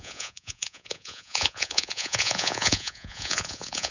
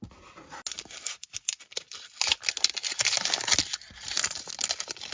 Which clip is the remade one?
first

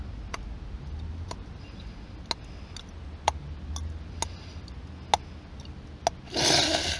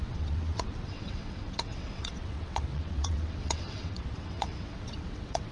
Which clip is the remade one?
second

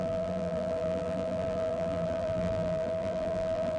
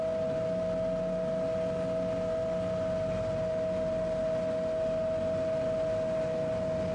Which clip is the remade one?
first